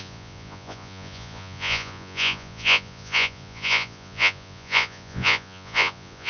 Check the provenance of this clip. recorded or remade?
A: remade